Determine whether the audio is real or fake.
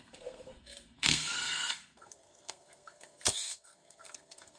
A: fake